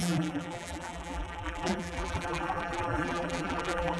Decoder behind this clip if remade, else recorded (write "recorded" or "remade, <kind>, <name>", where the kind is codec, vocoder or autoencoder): remade, vocoder, BigVGAN v2